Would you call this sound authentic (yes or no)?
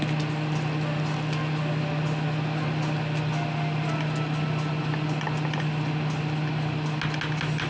yes